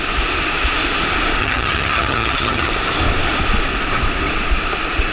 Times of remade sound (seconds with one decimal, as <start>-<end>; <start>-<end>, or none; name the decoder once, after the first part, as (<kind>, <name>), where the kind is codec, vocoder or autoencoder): 1.4-2.7 (vocoder, HiFi-GAN)